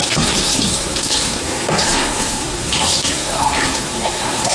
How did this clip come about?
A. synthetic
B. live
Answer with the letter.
A